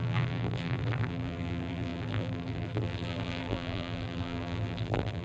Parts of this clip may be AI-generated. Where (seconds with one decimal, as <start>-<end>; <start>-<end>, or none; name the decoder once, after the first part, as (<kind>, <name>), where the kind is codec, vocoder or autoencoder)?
0.0-5.2 (vocoder, BigVGAN v2)